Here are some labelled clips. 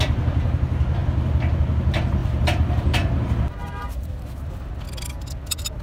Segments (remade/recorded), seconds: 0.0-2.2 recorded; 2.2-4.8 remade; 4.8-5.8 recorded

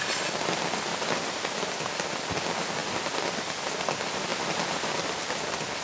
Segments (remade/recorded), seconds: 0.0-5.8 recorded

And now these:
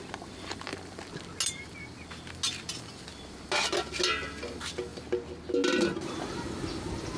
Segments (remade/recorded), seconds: 0.0-7.2 recorded